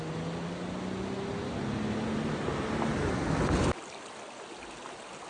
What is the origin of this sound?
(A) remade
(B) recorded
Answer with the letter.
B